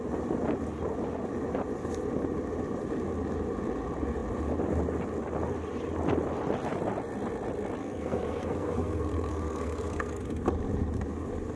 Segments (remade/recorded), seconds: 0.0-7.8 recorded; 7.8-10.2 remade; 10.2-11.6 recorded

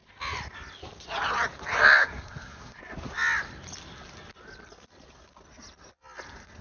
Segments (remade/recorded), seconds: 0.0-2.0 recorded; 2.0-2.8 remade; 2.8-6.6 recorded